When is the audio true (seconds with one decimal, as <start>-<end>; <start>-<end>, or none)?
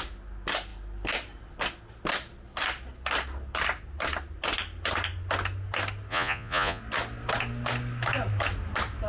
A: 0.0-6.1; 6.8-9.1